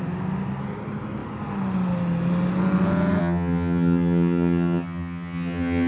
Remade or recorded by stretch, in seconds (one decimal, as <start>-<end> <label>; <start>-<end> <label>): 0.0-3.2 recorded; 3.2-5.9 remade